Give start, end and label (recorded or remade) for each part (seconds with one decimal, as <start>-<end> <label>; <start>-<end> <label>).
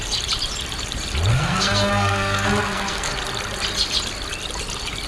0.0-1.3 recorded; 1.3-3.1 remade; 3.1-5.1 recorded